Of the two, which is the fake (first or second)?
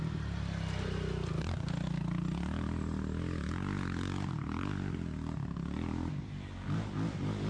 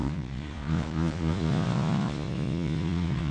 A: second